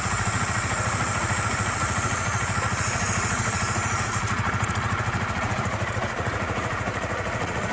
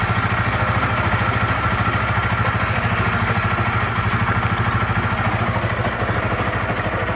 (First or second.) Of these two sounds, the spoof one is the first